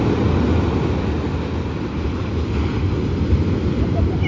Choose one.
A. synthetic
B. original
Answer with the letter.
B